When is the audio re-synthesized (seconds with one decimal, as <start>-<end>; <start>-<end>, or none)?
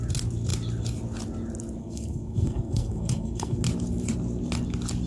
1.8-3.6